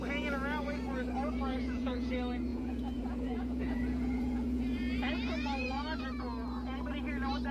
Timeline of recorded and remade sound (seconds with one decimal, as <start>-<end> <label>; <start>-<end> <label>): 0.0-1.5 recorded; 1.5-2.1 remade; 2.1-2.5 recorded; 2.5-6.0 remade; 6.0-7.5 recorded